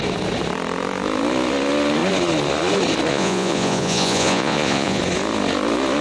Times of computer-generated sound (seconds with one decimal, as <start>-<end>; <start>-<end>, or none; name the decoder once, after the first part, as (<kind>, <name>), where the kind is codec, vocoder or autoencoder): 3.1-5.0 (vocoder, Vocos)